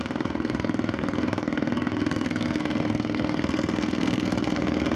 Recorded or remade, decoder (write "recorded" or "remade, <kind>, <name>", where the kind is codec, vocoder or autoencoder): remade, codec, SNAC